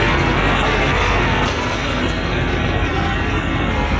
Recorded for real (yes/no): no